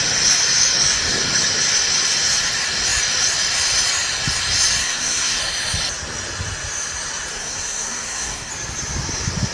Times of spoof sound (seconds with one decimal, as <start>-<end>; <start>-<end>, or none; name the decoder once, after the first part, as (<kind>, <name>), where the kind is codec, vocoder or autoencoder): 4.8-5.4 (codec, SNAC); 7.3-8.5

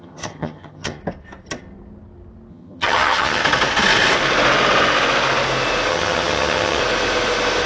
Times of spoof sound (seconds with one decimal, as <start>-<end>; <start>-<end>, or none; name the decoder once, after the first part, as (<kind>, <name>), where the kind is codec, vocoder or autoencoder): 0.0-1.0 (vocoder, HiFi-GAN); 2.5-3.4; 5.9-6.8

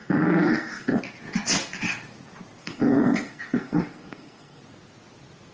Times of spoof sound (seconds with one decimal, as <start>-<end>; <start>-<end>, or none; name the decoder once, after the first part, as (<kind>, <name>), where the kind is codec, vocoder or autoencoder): 0.0-1.0 (codec, SNAC); 2.6-4.6

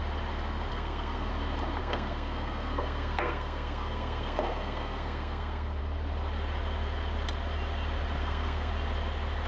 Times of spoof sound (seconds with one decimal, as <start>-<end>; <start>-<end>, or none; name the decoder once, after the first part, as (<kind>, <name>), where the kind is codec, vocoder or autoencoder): 0.7-1.3 (codec, SNAC); 1.8-5.8; 8.2-8.7